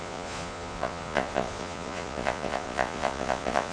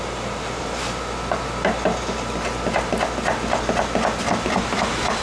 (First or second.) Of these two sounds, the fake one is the first